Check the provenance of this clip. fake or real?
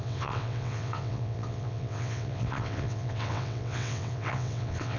fake